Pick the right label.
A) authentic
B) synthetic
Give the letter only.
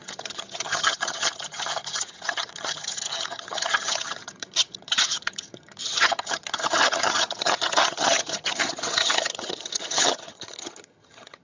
B